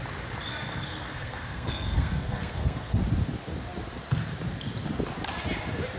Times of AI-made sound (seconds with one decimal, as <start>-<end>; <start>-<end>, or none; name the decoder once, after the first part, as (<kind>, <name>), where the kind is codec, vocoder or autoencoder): 0.9-3.0 (codec, SNAC)